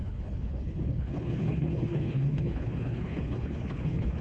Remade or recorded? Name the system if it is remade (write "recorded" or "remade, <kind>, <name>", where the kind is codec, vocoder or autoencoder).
remade, codec, HILCodec